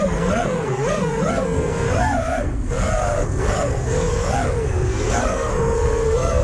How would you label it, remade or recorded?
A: remade